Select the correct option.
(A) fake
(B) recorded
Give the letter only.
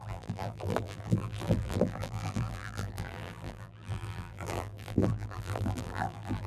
A